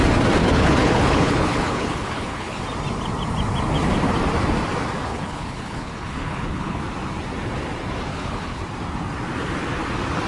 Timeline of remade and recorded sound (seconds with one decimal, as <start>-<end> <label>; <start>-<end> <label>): 0.0-0.4 recorded; 0.4-2.6 remade; 2.6-5.1 recorded; 5.1-6.8 remade; 6.8-8.1 recorded; 8.1-8.6 remade; 8.6-10.3 recorded